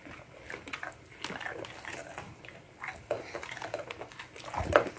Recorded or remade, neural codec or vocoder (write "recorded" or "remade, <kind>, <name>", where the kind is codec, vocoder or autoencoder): recorded